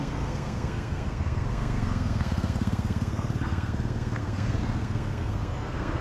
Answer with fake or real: fake